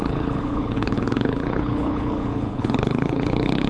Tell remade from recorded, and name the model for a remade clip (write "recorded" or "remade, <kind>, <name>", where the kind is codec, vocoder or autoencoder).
remade, codec, HILCodec